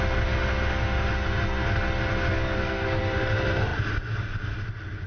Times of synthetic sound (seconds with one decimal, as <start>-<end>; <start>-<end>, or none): 2.3-3.0